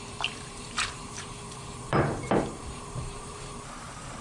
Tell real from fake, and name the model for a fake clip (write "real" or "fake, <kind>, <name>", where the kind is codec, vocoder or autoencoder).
fake, vocoder, BigVGAN v2